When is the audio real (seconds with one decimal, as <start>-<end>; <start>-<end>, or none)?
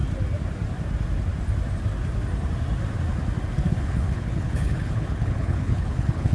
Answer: 0.0-3.8